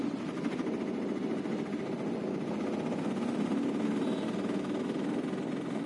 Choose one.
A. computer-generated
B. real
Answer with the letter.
B